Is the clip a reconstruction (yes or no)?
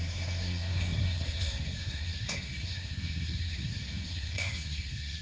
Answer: yes